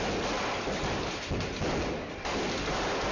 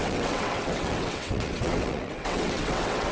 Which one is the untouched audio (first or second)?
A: first